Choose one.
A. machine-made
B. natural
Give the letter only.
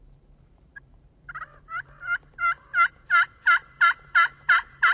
A